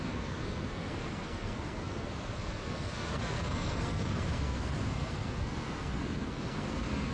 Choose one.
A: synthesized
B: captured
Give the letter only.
A